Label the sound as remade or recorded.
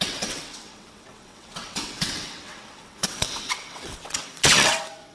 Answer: remade